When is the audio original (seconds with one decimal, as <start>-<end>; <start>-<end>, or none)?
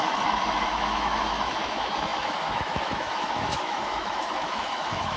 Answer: none